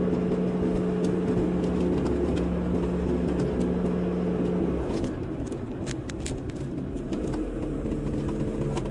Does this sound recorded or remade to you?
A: recorded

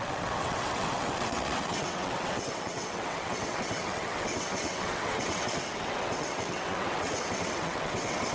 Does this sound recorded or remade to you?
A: remade